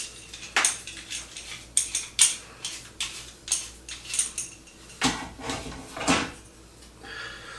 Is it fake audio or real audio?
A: real